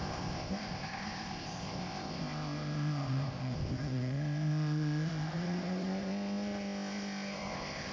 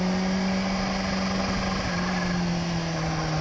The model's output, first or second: first